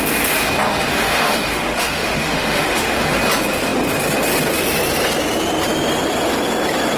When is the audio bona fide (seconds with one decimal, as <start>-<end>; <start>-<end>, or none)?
0.0-0.9; 3.2-7.0